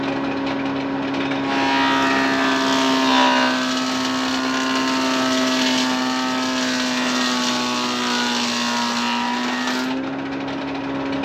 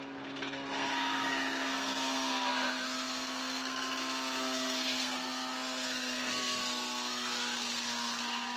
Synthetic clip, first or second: second